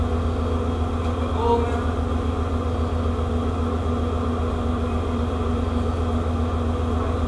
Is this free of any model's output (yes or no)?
yes